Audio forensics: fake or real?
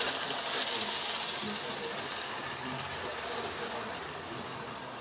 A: real